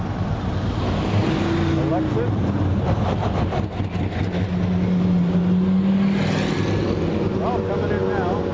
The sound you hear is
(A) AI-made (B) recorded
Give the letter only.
B